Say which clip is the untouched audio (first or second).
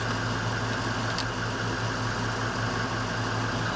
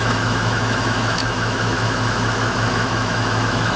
first